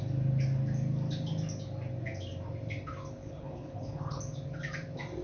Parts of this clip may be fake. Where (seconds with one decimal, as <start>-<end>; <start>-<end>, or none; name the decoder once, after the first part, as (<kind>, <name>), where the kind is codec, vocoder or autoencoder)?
3.2-4.2 (codec, HILCodec)